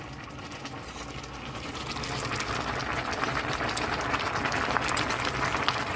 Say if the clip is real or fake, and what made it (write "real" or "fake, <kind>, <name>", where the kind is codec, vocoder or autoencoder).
real